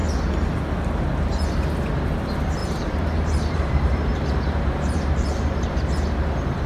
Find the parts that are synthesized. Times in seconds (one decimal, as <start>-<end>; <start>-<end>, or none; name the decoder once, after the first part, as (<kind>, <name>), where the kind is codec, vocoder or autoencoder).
2.6-5.9 (vocoder, BigVGAN v2)